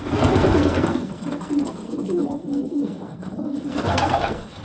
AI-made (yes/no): yes